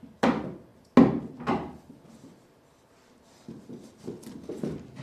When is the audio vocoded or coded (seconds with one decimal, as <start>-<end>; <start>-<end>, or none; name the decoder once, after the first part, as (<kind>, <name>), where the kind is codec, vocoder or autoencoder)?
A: none